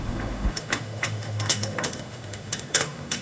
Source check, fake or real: fake